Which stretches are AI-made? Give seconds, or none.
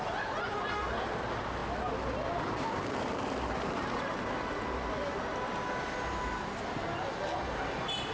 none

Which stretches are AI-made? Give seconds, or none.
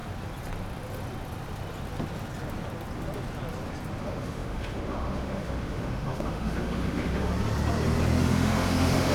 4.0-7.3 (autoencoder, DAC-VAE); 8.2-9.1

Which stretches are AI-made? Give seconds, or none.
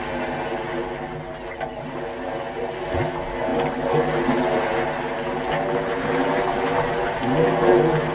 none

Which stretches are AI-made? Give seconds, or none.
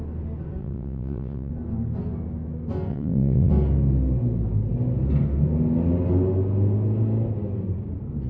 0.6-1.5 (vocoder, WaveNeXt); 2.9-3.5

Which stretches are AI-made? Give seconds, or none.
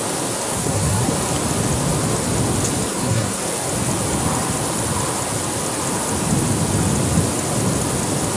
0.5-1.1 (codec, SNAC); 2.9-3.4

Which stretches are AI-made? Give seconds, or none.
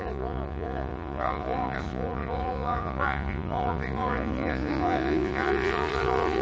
0.0-6.4 (vocoder, Vocos)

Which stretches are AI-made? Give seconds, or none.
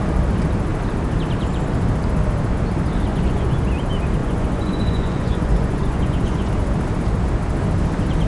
3.1-3.6 (vocoder, Vocos); 4.2-6.5